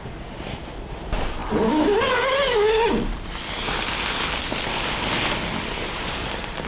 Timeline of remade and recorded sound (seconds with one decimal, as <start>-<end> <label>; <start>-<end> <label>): 0.0-6.7 recorded